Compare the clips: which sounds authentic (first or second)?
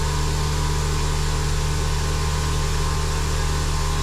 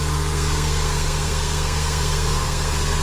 first